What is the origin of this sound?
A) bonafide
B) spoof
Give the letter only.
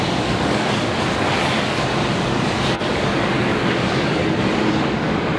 B